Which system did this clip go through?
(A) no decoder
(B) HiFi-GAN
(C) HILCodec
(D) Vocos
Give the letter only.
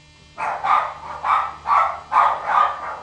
A